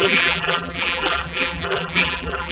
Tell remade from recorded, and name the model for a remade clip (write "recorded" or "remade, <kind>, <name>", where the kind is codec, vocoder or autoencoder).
remade, vocoder, BigVGAN v2